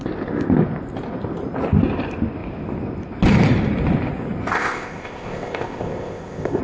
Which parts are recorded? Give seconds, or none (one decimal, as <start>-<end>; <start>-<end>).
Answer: 0.0-4.5